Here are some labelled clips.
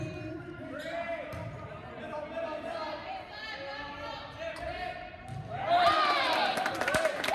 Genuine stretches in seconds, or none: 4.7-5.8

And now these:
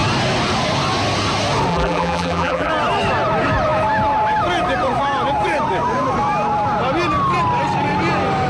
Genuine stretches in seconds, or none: 0.0-1.7; 2.7-8.5

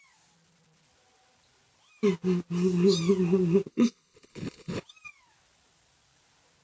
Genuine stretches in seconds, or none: 0.0-3.7; 4.8-6.6

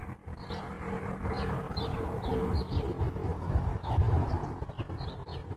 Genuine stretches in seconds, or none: 0.0-3.0; 4.3-5.6

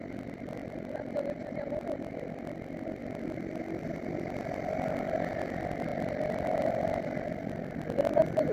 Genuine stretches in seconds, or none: 0.0-0.6; 1.5-5.9

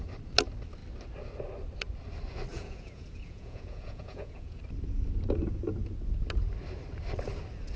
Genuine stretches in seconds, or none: 0.0-2.5; 4.6-7.8